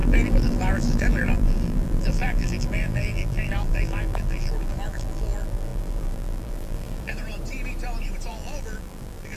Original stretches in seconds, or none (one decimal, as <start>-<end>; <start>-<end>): 7.1-8.3